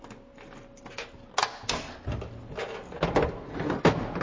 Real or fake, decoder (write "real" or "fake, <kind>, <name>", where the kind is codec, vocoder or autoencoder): real